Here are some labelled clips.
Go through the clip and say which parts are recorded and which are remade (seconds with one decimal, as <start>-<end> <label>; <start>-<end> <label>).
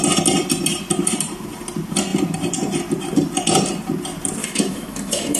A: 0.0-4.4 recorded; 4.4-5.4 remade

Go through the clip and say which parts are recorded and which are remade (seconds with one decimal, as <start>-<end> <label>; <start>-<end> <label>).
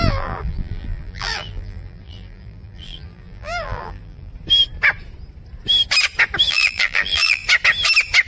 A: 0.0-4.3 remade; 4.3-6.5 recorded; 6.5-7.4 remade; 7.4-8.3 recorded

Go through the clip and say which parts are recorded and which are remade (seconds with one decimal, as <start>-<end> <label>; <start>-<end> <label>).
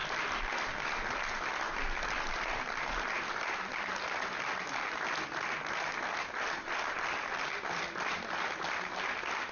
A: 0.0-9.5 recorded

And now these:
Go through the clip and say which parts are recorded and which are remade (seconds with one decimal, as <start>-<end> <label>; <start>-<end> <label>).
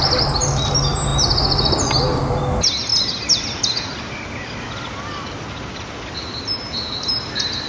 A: 0.0-7.7 recorded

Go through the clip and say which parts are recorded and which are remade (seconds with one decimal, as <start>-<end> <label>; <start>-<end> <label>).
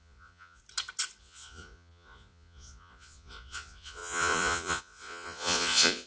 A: 0.0-0.6 remade; 0.6-1.2 recorded; 1.2-6.1 remade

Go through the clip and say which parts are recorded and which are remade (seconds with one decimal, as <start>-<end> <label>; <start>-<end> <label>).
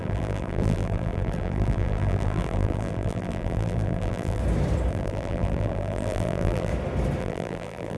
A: 0.0-4.4 remade; 4.4-4.9 recorded; 4.9-6.7 remade; 6.7-7.2 recorded; 7.2-8.0 remade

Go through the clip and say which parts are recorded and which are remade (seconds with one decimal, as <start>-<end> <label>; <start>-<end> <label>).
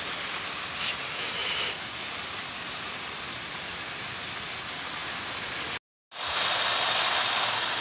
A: 0.0-7.8 recorded